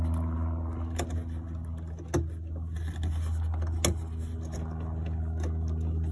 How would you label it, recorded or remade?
recorded